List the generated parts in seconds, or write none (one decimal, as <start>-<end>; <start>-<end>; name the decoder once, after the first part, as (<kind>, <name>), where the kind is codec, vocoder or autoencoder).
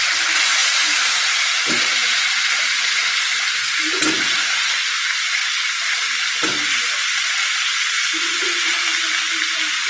none